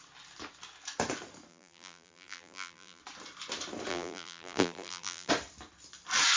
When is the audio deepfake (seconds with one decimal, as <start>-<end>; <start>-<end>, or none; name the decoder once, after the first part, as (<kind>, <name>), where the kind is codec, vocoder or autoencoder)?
1.5-3.0 (vocoder, BigVGAN v2); 3.9-5.3